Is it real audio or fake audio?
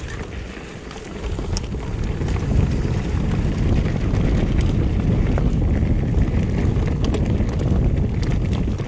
real